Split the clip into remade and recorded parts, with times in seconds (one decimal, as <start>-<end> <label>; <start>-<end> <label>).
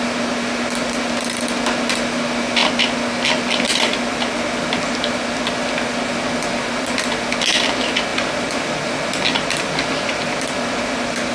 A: 0.0-11.3 recorded